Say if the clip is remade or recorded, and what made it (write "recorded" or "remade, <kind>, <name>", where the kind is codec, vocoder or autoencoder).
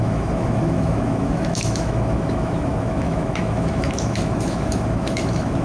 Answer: remade, autoencoder, DAC-VAE